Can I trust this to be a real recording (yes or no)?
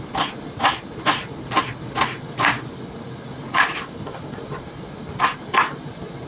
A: yes